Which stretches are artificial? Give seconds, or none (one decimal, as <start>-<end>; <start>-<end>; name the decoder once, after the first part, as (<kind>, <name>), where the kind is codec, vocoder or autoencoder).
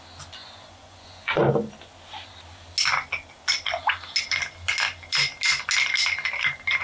0.4-1.5 (vocoder, Vocos)